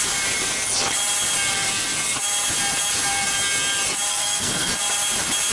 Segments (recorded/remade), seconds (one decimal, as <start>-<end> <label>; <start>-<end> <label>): 0.0-4.1 recorded; 4.1-4.7 remade; 4.7-5.5 recorded